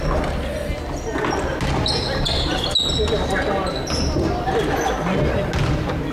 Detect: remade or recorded recorded